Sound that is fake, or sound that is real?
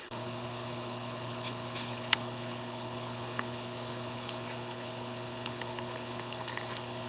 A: fake